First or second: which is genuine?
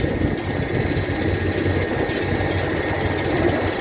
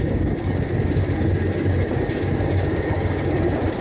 first